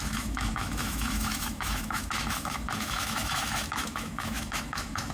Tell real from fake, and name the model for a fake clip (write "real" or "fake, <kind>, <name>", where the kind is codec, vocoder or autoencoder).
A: fake, autoencoder, DAC-VAE